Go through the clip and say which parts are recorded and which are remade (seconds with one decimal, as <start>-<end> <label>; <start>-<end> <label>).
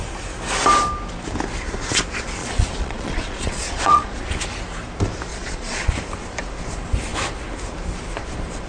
0.0-2.4 recorded; 2.4-4.2 remade; 4.2-5.3 recorded; 5.3-5.9 remade; 5.9-8.7 recorded